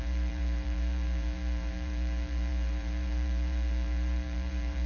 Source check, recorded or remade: remade